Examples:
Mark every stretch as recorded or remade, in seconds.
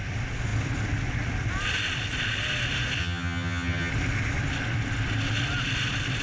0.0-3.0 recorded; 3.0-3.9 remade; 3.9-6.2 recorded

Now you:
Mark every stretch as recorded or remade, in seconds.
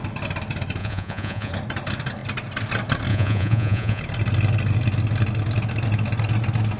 0.0-0.8 recorded; 0.8-1.5 remade; 1.5-3.1 recorded; 3.1-4.0 remade; 4.0-6.8 recorded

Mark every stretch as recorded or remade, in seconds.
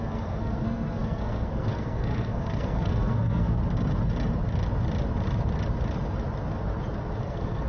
0.0-3.6 remade; 3.6-7.2 recorded; 7.2-7.7 remade